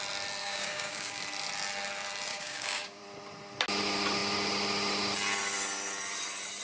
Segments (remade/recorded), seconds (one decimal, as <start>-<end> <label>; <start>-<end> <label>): 0.0-0.4 recorded; 0.4-1.2 remade; 1.2-2.3 recorded; 2.3-3.0 remade; 3.0-6.6 recorded